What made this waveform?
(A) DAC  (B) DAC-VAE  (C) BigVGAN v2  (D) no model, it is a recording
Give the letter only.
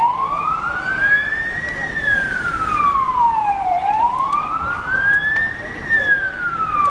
C